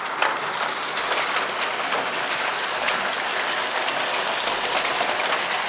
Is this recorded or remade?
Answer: recorded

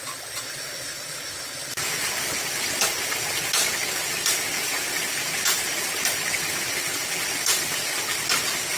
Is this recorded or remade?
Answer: recorded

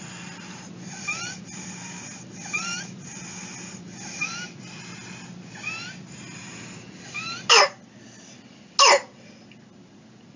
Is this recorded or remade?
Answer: recorded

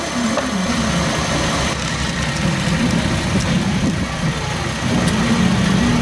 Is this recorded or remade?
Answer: recorded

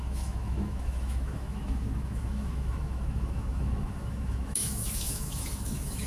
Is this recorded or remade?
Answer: remade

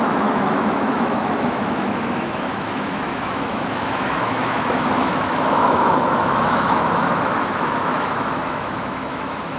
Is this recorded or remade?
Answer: remade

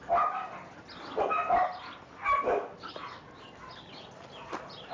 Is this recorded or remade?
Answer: recorded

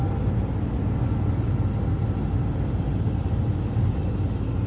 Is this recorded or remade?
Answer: recorded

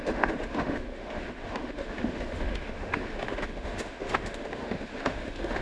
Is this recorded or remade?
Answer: remade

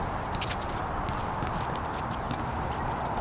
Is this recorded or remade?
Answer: recorded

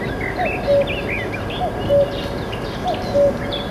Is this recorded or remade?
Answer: recorded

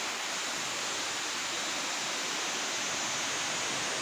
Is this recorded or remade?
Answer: recorded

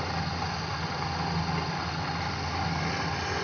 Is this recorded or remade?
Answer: recorded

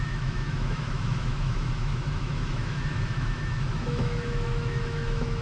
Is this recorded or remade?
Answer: remade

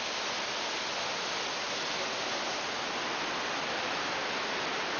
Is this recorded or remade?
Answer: recorded